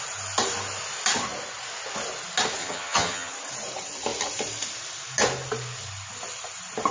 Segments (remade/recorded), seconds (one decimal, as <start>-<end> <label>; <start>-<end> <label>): 0.0-2.6 recorded; 2.6-3.3 remade; 3.3-6.9 recorded